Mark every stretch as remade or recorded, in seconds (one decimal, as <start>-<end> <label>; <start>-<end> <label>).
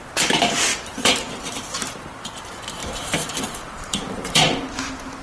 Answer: 0.0-0.7 recorded; 0.7-2.3 remade; 2.3-2.8 recorded; 2.8-4.4 remade; 4.4-5.2 recorded